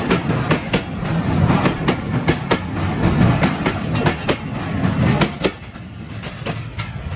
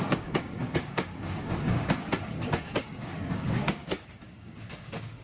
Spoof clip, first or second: second